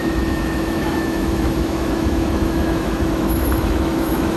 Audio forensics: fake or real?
fake